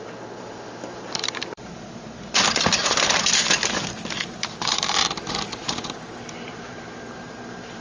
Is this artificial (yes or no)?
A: yes